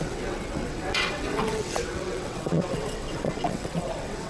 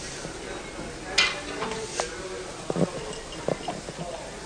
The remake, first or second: first